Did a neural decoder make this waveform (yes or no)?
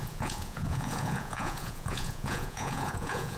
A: yes